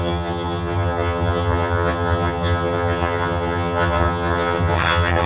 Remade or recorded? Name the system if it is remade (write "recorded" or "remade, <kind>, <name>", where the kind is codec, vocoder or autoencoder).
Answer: remade, vocoder, HiFi-GAN